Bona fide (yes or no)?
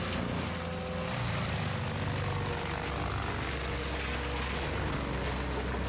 yes